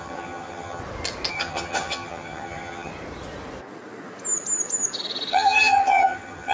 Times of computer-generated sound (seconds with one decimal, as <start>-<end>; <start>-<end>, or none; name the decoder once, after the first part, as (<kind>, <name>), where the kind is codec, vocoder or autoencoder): 0.0-0.8 (vocoder, HiFi-GAN); 1.3-2.9; 5.3-6.5